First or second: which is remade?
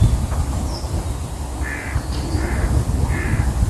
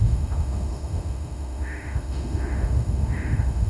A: second